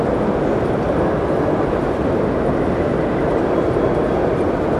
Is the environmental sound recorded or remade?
recorded